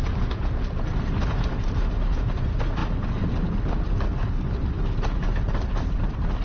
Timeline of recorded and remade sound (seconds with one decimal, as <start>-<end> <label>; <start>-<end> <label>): 0.0-6.4 recorded